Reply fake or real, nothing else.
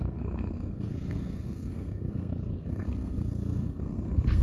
fake